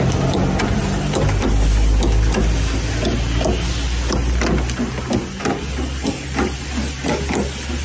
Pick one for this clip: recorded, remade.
recorded